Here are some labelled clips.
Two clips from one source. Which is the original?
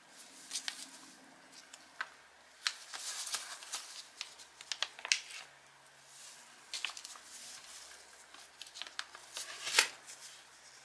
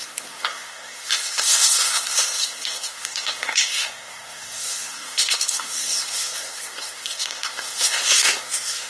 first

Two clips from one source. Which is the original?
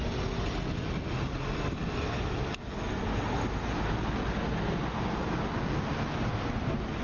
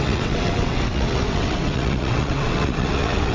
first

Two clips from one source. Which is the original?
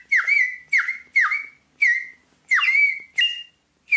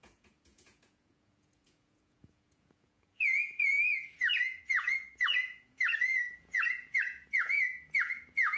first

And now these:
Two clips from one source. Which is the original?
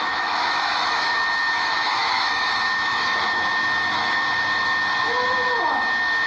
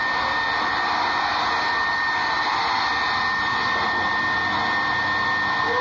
second